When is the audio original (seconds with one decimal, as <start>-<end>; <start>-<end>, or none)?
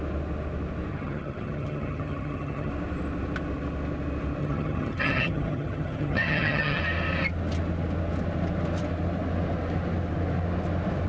0.0-0.9; 2.7-4.4; 6.8-11.1